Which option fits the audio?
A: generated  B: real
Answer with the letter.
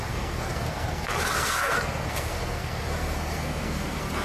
A